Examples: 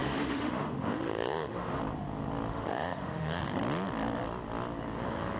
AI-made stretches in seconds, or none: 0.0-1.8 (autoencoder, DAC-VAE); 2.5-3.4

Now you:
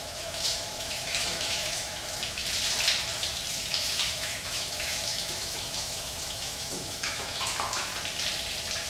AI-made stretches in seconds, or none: 0.0-2.4 (autoencoder, DAC-VAE); 3.5-7.9

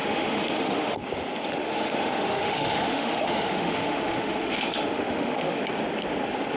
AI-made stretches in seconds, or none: 0.0-1.0 (autoencoder, DAC-VAE); 1.6-5.6

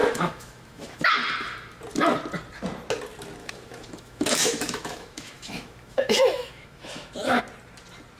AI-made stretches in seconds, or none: 0.0-1.1 (autoencoder, DAC-VAE); 3.4-7.4

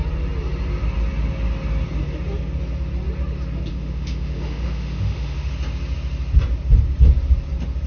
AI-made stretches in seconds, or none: 3.7-5.5 (autoencoder, DAC-VAE)